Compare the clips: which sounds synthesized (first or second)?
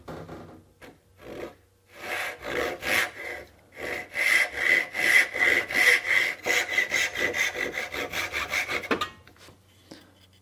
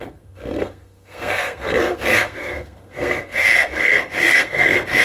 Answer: second